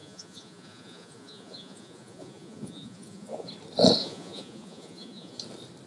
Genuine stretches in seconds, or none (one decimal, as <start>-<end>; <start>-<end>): 3.5-4.0; 5.4-5.9